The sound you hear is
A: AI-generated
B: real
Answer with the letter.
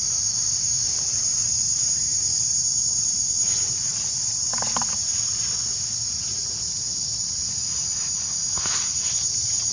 B